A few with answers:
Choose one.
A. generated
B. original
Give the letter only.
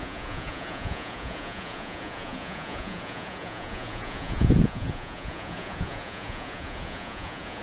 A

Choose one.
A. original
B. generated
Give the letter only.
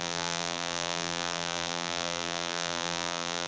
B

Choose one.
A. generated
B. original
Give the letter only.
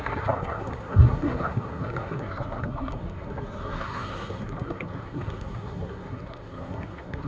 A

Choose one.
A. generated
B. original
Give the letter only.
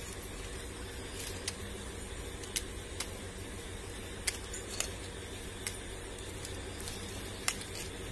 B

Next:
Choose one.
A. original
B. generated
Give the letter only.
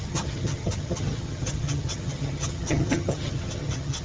B